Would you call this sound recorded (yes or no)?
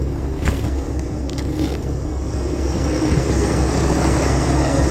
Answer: no